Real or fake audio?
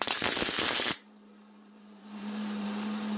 fake